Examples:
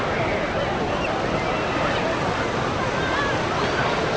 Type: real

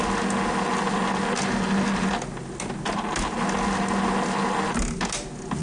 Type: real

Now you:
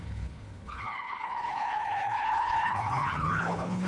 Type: fake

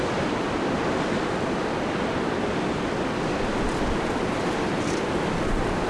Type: real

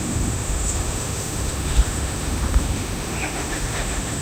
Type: fake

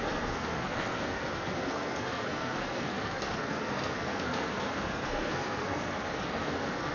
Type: fake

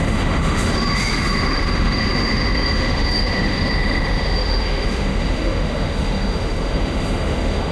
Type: fake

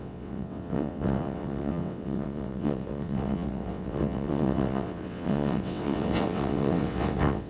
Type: fake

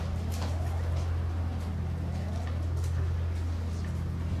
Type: real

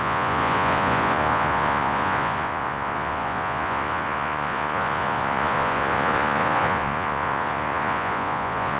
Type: fake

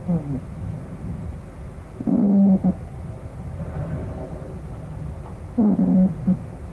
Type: real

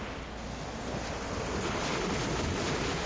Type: real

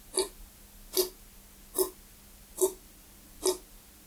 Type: real